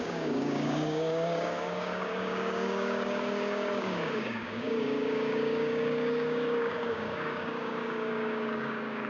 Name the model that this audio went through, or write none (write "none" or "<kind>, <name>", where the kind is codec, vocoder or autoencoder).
codec, DAC